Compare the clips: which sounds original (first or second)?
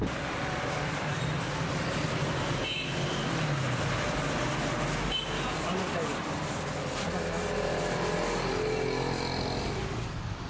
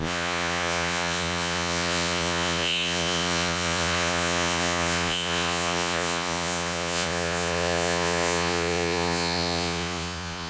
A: first